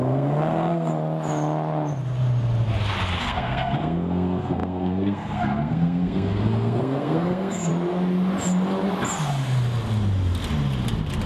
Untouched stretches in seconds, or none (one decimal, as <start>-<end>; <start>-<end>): 0.9-3.2; 7.7-11.3